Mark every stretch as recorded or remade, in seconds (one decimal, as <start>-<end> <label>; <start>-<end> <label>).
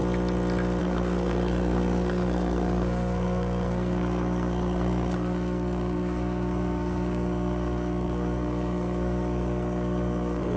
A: 0.0-0.8 recorded; 0.8-10.6 remade